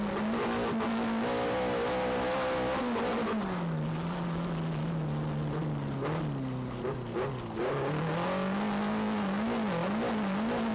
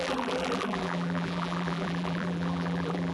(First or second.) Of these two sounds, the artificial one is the second